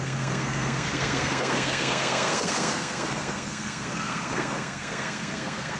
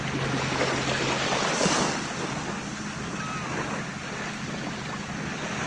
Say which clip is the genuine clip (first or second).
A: second